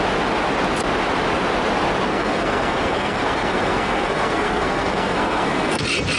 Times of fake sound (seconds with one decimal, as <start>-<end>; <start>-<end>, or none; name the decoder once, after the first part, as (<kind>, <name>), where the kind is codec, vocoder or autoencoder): 2.1-5.8 (codec, SNAC)